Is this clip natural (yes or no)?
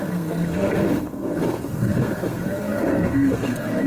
no